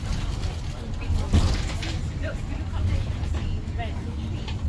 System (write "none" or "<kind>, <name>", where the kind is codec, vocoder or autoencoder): none